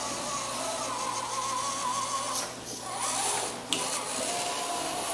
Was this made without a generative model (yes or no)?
yes